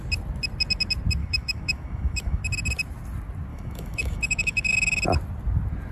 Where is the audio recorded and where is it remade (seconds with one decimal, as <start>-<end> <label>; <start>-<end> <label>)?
0.0-1.2 recorded; 1.2-2.4 remade; 2.4-3.5 recorded; 3.5-5.0 remade; 5.0-5.9 recorded